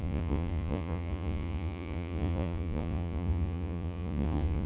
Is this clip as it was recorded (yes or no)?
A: no